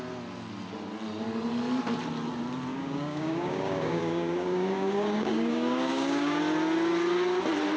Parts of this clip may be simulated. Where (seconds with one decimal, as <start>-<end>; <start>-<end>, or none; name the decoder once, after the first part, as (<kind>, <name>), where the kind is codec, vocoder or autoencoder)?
2.7-6.4 (codec, DAC)